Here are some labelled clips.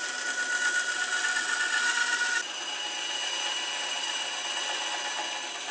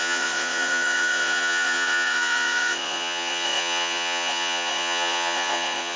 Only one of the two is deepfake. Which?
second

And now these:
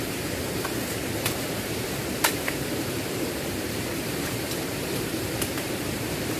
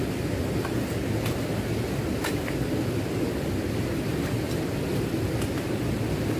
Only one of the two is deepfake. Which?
first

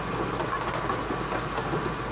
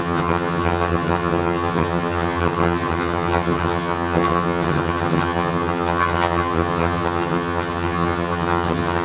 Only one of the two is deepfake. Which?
second